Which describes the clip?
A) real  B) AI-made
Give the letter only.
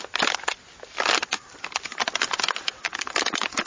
A